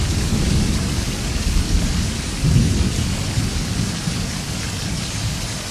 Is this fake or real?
fake